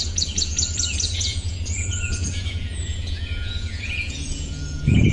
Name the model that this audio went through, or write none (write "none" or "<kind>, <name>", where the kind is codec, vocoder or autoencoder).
vocoder, Vocos